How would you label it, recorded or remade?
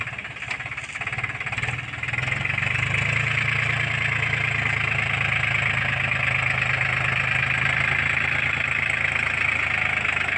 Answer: recorded